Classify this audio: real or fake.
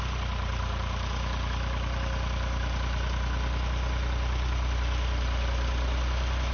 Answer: real